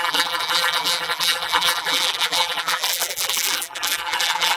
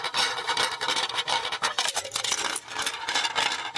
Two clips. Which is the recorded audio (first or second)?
second